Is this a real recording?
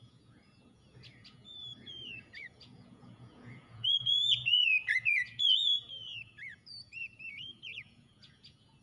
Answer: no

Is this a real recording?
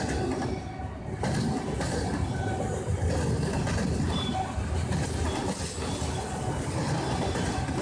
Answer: yes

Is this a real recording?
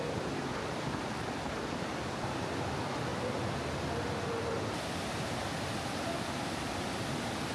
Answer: yes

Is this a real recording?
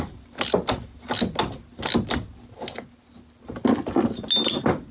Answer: yes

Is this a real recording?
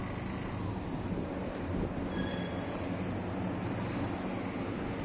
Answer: yes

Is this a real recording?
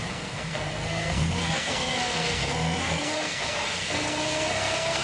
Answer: no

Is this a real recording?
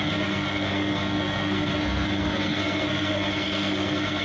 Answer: no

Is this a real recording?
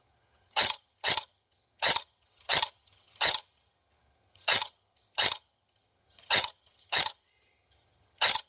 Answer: no